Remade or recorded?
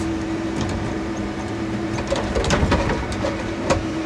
remade